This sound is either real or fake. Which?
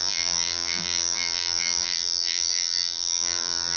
fake